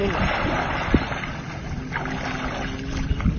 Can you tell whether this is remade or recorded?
recorded